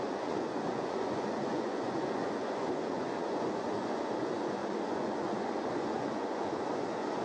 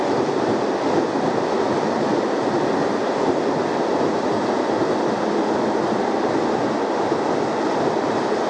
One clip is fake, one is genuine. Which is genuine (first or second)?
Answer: second